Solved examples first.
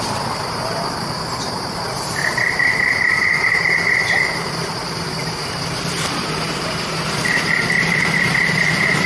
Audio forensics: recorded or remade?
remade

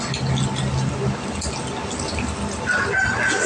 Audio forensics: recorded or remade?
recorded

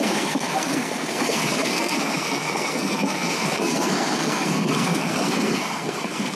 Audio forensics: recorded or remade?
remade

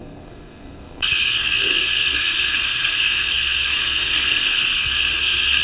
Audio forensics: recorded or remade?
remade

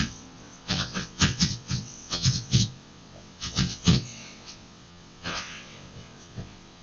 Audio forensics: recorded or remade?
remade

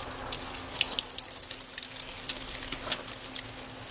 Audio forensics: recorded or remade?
recorded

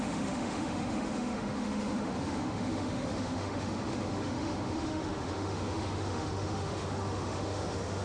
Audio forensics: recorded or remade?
remade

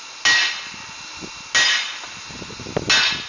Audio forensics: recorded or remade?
recorded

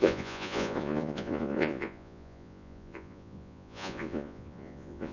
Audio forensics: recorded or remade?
remade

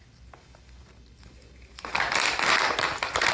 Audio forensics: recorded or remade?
recorded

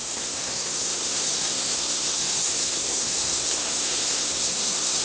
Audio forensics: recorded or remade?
remade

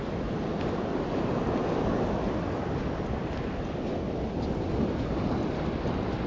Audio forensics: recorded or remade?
recorded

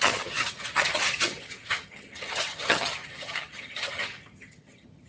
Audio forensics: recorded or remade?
remade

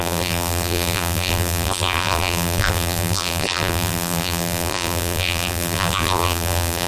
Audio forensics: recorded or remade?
remade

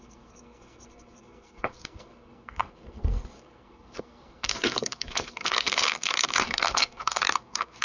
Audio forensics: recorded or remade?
remade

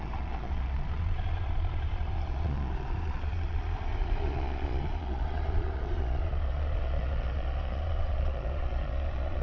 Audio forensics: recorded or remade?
remade